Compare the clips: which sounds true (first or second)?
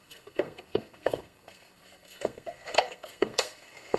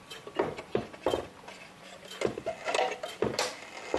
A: second